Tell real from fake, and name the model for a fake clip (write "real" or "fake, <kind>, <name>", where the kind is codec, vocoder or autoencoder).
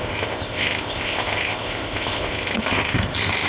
fake, codec, ZipCodec